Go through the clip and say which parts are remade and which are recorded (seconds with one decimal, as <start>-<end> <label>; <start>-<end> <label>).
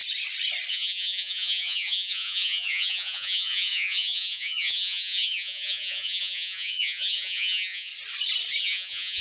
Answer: 0.0-0.7 recorded; 0.7-7.9 remade; 7.9-8.6 recorded; 8.6-9.2 remade